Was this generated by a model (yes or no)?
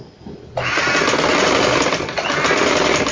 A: no